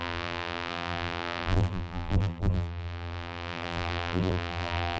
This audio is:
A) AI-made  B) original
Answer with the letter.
A